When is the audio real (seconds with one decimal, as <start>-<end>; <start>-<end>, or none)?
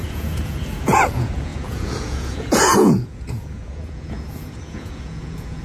none